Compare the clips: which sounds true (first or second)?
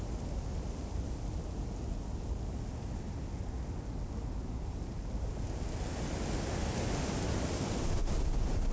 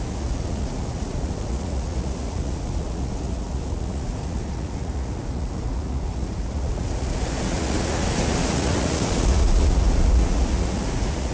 first